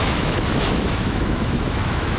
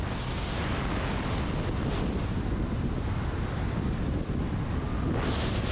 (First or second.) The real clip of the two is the second